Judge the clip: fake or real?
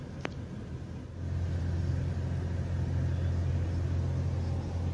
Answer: real